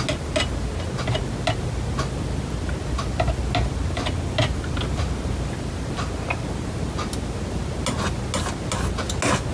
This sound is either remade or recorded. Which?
recorded